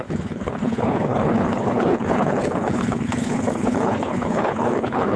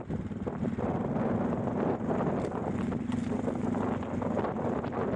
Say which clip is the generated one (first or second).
first